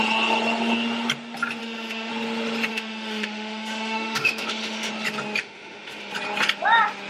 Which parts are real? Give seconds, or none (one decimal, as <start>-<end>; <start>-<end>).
0.0-1.6; 2.1-2.7; 4.9-5.4; 6.1-7.1